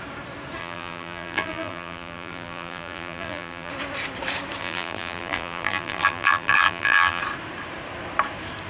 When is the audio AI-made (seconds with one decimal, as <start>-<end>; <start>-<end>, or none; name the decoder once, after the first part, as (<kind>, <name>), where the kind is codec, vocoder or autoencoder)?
0.6-3.7 (vocoder, BigVGAN v2); 4.6-7.2